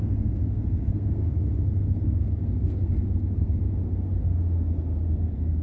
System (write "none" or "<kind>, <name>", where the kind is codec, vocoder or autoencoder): codec, SNAC